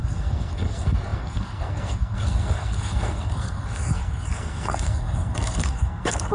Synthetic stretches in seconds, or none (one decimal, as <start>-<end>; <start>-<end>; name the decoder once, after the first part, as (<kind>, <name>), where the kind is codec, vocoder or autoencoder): 0.0-6.3 (codec, SNAC)